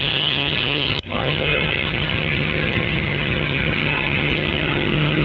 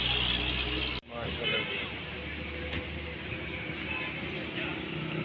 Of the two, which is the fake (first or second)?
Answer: first